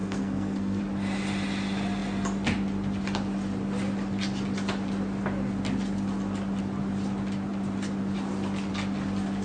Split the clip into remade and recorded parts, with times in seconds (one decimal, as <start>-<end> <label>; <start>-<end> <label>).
0.0-0.8 remade; 0.8-9.4 recorded